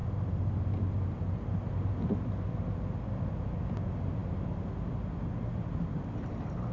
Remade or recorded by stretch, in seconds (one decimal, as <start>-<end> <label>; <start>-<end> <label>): 0.0-6.7 recorded